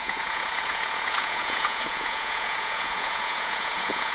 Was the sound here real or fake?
fake